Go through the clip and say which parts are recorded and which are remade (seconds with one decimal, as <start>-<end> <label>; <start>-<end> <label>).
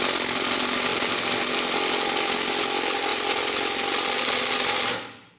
0.0-5.4 recorded